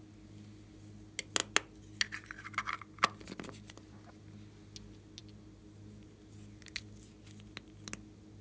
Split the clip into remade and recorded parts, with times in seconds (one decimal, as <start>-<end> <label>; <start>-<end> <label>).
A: 0.0-8.4 recorded